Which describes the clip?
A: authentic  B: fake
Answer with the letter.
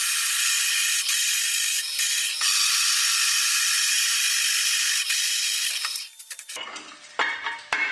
A